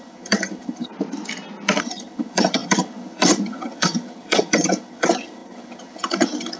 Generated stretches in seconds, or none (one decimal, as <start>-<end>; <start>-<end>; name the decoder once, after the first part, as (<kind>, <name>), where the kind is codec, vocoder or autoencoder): 0.0-0.9 (vocoder, HiFi-GAN); 1.8-6.6